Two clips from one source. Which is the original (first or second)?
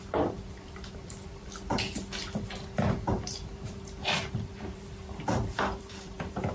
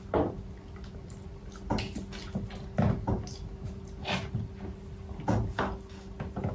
second